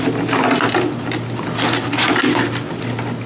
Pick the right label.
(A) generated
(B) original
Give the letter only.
B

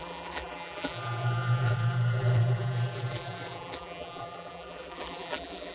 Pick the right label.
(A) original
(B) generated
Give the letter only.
B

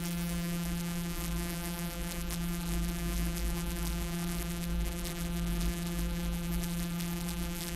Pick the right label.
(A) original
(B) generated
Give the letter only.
B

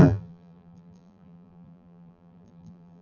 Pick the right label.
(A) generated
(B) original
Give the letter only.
A